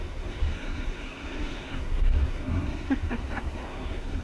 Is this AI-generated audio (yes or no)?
yes